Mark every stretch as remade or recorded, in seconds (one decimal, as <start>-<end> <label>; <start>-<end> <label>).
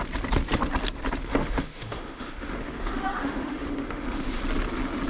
0.0-1.3 recorded; 1.3-4.4 remade; 4.4-5.1 recorded